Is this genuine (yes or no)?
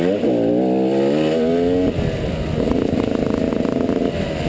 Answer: yes